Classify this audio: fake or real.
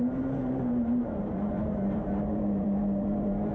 fake